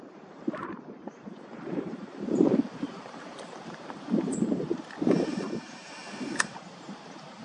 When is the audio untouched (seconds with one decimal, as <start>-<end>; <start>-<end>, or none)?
none